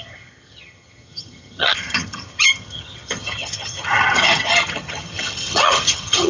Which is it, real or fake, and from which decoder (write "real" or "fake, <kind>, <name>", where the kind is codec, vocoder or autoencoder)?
fake, vocoder, HiFi-GAN